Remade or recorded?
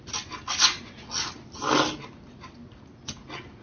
recorded